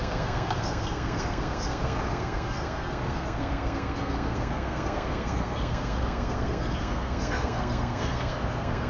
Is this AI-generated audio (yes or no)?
yes